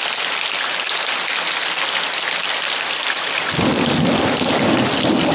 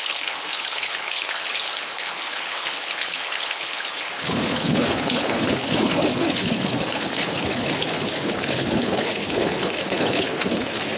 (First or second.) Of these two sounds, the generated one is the second